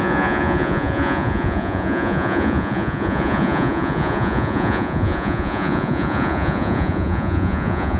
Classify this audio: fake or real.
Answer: fake